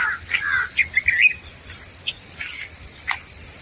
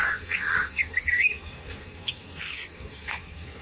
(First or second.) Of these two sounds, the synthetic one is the second